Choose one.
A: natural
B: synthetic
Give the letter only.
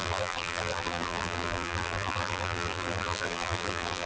B